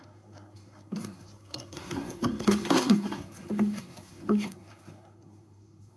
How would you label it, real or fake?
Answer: fake